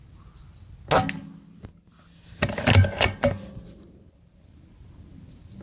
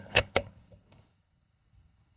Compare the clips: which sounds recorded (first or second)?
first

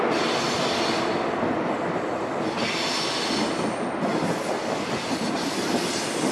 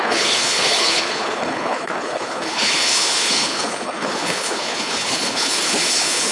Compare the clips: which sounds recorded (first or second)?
first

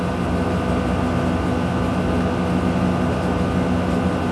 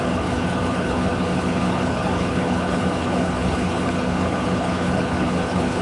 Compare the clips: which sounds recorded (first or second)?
first